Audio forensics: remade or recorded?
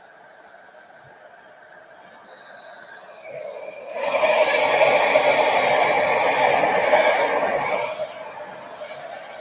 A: recorded